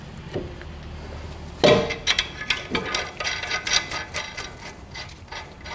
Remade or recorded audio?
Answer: recorded